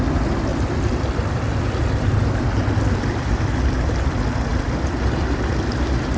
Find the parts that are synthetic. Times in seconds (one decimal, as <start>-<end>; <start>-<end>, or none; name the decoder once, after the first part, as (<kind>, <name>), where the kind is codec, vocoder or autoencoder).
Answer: 0.5-4.1 (vocoder, BigVGAN v2); 4.5-5.4